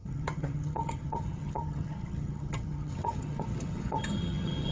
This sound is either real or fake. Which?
fake